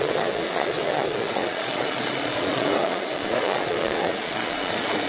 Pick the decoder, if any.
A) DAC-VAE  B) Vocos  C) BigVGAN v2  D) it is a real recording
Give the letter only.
B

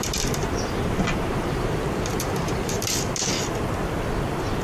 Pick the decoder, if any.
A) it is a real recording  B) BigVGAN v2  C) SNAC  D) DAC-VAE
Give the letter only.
A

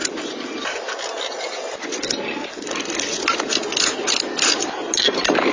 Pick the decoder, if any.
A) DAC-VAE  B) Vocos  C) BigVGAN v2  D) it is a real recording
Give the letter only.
D